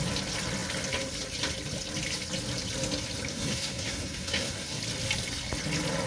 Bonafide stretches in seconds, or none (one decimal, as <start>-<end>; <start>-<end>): 0.0-3.3; 4.8-6.1